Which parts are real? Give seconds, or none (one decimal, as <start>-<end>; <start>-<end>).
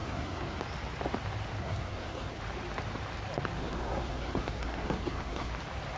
0.6-1.6; 2.4-3.6; 5.5-6.0